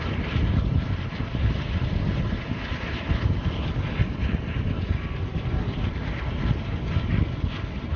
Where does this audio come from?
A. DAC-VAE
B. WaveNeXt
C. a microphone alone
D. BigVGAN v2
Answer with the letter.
D